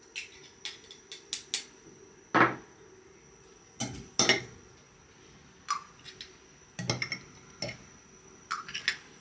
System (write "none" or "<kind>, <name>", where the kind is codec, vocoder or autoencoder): none